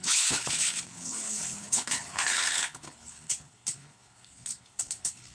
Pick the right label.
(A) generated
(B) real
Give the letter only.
A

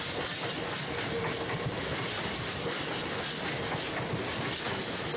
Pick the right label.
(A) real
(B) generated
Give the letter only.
A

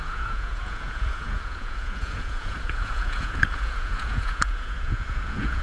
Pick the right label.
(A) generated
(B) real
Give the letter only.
A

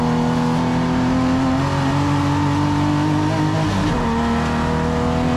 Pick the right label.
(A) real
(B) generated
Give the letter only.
A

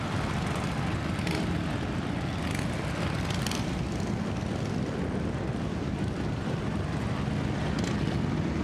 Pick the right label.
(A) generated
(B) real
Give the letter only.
B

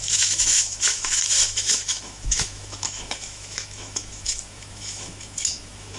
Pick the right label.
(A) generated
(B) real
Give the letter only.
A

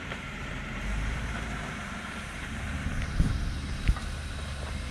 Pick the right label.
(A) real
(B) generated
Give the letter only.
B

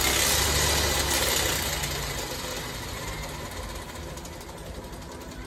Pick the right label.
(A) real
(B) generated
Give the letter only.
A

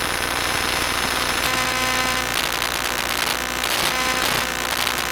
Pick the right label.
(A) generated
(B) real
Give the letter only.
B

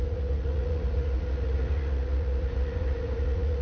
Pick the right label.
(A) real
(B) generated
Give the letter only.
B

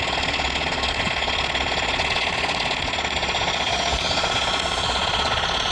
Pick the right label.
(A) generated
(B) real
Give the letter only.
A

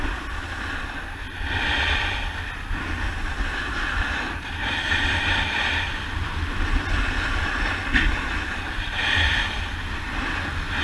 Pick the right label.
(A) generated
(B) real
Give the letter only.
B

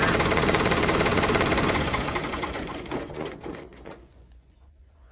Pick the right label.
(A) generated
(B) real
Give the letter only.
A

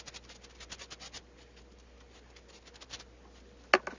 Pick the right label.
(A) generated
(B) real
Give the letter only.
B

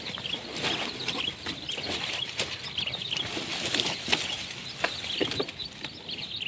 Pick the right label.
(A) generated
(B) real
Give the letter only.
B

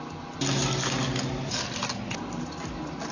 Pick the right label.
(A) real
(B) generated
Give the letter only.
A